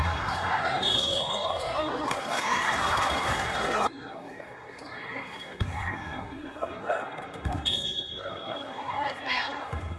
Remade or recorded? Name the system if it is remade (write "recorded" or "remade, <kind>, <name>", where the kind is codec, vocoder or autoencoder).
remade, codec, SNAC